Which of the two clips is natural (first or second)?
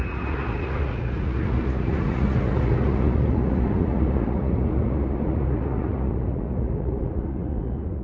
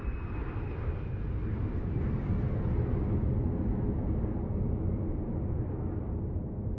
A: second